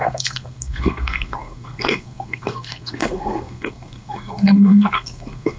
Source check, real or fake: fake